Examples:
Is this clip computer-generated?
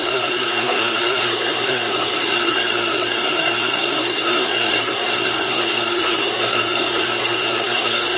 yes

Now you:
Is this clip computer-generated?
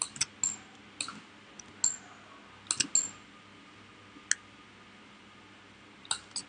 no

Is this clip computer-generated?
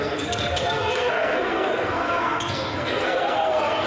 yes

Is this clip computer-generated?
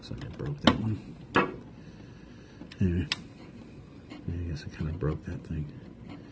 no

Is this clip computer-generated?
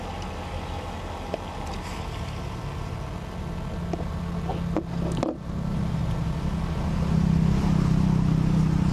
no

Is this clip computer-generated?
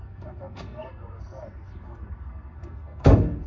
yes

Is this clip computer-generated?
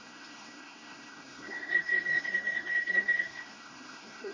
yes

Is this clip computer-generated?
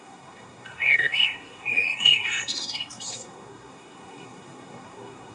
yes